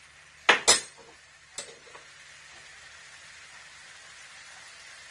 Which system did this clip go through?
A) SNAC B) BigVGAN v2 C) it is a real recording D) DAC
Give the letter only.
C